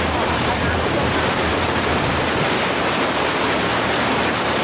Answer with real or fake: real